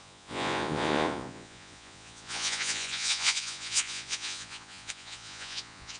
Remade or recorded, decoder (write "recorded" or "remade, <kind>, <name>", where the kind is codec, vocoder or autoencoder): remade, vocoder, Vocos